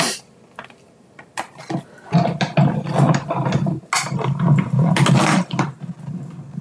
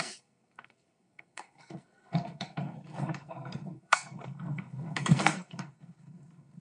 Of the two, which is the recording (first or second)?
first